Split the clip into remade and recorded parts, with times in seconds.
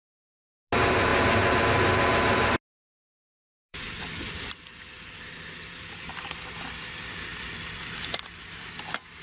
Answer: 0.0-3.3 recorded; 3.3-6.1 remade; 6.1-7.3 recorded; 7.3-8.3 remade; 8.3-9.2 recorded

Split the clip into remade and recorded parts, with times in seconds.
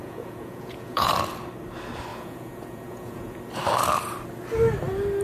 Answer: 0.0-1.1 remade; 1.1-2.1 recorded; 2.1-3.4 remade; 3.4-5.2 recorded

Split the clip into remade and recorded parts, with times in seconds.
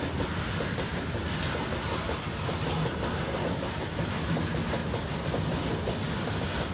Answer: 0.0-3.4 recorded; 3.4-4.3 remade; 4.3-6.7 recorded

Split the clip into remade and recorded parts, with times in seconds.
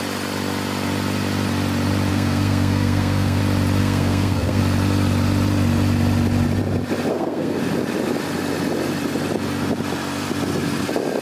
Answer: 0.0-2.1 recorded; 2.1-3.4 remade; 3.4-3.8 recorded; 3.8-4.6 remade; 4.6-7.1 recorded; 7.1-7.6 remade; 7.6-11.2 recorded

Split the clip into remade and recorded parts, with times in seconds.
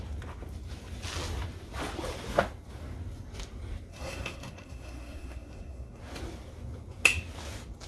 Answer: 0.0-3.9 recorded; 3.9-6.0 remade; 6.0-7.9 recorded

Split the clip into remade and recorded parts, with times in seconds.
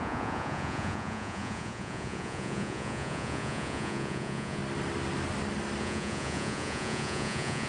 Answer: 0.0-4.6 remade; 4.6-5.8 recorded; 5.8-7.7 remade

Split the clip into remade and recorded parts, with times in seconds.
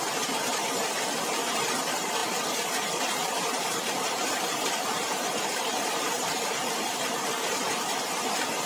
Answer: 0.0-8.7 remade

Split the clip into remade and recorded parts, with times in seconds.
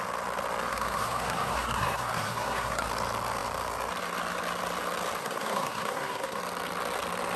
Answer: 0.0-0.7 recorded; 0.7-2.9 remade; 2.9-5.2 recorded; 5.2-6.4 remade; 6.4-7.4 recorded